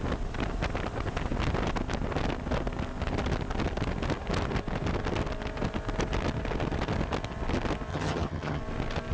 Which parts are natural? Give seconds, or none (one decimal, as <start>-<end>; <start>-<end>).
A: 0.0-7.9; 8.6-9.1